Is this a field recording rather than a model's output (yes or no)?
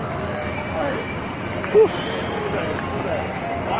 no